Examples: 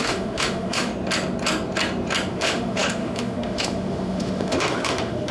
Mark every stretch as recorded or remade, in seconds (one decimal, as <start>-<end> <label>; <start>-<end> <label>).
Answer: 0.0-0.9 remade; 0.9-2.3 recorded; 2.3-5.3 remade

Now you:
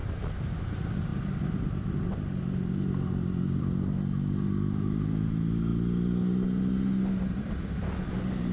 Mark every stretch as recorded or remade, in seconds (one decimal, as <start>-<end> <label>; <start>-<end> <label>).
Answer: 0.0-8.5 recorded

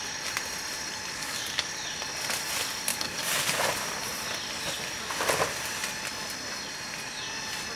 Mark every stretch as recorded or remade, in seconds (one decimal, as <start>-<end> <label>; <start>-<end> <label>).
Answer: 0.0-1.1 recorded; 1.1-1.7 remade; 1.7-2.9 recorded; 2.9-3.4 remade; 3.4-7.8 recorded

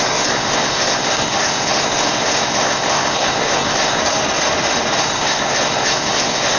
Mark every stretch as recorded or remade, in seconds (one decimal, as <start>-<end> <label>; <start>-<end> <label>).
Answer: 0.0-4.0 remade; 4.0-5.0 recorded; 5.0-6.6 remade